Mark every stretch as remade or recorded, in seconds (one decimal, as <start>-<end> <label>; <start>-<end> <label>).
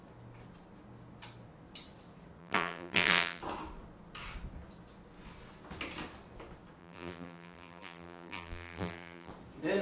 0.0-2.4 recorded; 2.4-3.4 remade; 3.4-6.8 recorded; 6.8-9.3 remade; 9.3-9.8 recorded